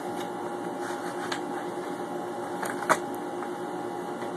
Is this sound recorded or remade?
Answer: recorded